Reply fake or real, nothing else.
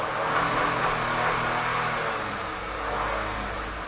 real